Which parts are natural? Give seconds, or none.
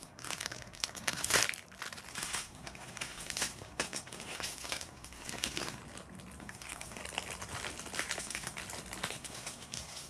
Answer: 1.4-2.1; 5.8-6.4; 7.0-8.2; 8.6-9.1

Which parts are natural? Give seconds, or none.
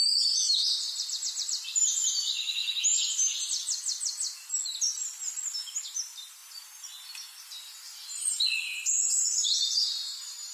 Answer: 2.6-5.6; 6.4-9.0